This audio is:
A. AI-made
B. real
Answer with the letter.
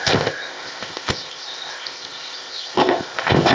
A